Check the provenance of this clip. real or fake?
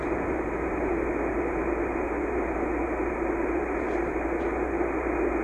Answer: real